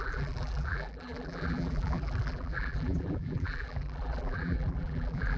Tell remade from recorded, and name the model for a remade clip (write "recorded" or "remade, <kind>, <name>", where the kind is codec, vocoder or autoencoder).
remade, vocoder, BigVGAN v2